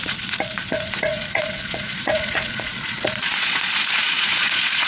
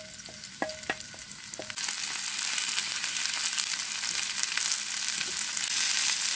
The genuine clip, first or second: second